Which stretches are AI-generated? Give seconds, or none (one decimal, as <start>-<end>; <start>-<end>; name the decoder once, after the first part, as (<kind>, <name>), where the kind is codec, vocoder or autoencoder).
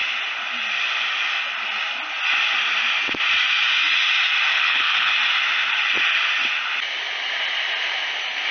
4.5-5.1 (codec, HILCodec)